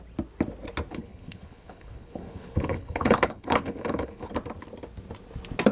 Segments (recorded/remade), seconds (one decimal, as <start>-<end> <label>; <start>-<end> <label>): 0.0-0.9 recorded; 0.9-4.3 remade; 4.3-5.7 recorded